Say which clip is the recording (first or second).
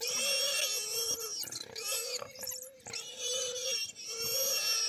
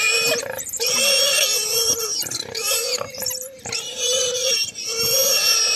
first